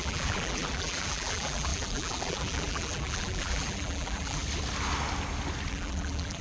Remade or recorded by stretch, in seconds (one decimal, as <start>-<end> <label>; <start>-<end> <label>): 0.0-4.4 remade; 4.4-5.7 recorded; 5.7-6.4 remade